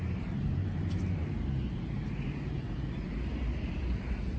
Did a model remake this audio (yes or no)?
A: yes